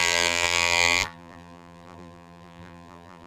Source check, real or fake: fake